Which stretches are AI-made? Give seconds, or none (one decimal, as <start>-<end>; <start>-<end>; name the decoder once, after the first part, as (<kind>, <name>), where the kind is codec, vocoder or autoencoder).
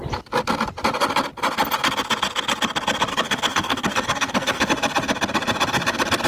3.1-4.7 (codec, SNAC)